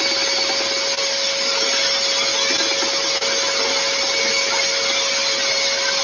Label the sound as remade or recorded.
recorded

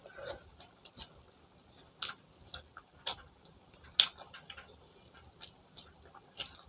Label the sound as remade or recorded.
recorded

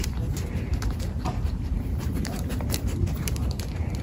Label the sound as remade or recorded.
remade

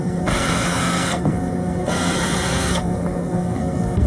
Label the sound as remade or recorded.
remade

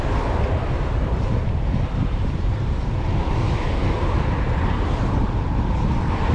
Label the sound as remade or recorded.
remade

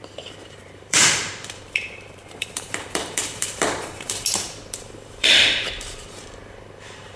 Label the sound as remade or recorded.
remade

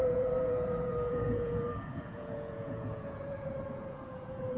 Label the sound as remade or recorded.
remade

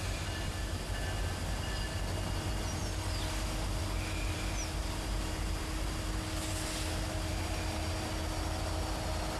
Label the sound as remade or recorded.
recorded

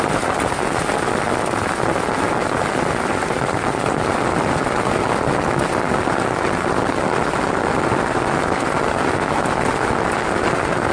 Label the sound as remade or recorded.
recorded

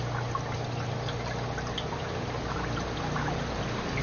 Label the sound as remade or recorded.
recorded